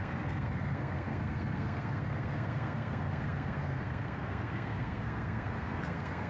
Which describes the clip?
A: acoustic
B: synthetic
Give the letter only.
B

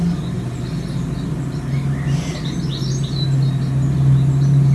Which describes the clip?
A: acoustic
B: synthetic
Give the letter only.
A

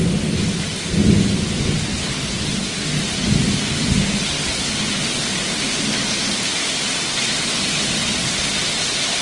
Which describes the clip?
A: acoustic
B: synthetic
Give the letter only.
A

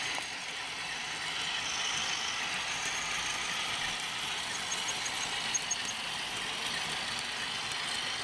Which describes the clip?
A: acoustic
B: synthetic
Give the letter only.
A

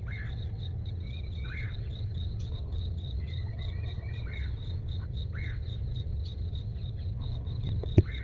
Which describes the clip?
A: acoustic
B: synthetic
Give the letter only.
B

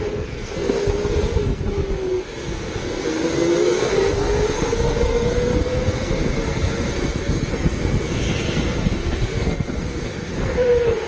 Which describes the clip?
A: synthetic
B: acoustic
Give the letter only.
A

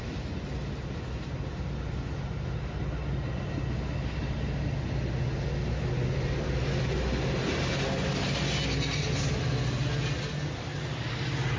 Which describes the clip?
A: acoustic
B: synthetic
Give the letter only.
A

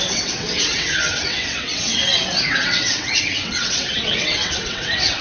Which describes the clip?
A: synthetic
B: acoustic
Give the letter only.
A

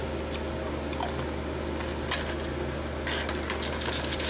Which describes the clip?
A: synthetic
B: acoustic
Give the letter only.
B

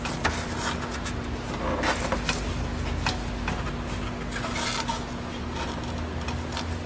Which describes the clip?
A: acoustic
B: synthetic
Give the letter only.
A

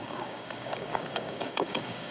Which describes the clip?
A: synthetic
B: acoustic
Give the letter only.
A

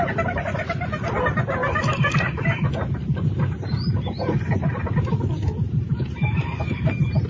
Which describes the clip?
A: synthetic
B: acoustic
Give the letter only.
B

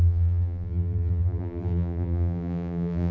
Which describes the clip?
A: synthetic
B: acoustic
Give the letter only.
A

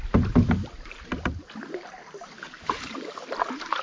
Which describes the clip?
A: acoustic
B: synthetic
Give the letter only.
A